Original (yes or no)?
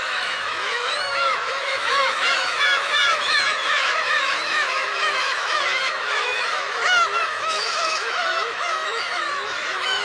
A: no